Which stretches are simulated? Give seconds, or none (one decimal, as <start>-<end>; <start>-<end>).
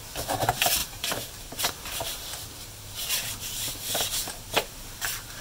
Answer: 0.8-3.7